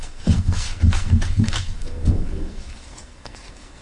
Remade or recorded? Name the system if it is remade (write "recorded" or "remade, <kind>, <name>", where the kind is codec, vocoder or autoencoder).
remade, codec, SNAC